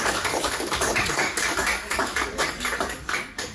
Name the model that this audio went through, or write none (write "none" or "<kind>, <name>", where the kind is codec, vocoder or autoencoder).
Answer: codec, DAC